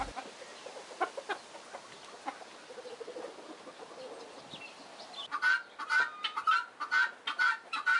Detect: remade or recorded recorded